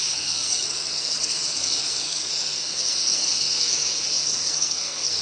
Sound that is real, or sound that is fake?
fake